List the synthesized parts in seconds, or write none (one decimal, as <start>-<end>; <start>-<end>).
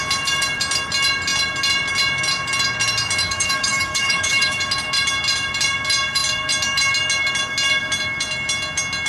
3.2-4.6